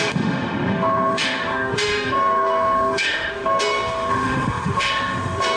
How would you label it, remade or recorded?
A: remade